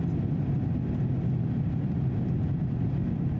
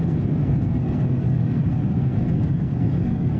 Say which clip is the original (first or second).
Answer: first